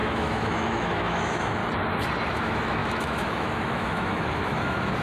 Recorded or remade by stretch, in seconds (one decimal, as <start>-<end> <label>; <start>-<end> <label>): 0.0-1.6 remade; 1.6-2.3 recorded; 2.3-5.0 remade